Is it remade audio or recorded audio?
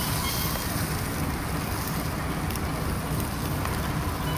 recorded